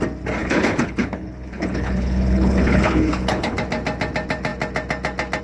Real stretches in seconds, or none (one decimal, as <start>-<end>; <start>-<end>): 0.0-0.4; 3.6-5.4